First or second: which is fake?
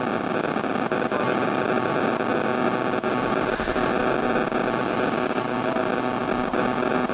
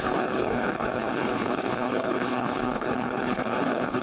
second